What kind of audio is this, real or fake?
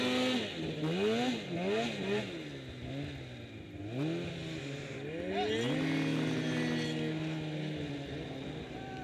real